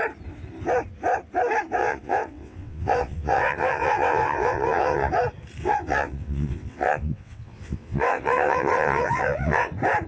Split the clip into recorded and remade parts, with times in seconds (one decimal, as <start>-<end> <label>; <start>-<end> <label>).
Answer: 0.0-1.8 recorded; 1.8-5.1 remade; 5.1-5.6 recorded; 5.6-9.7 remade; 9.7-10.1 recorded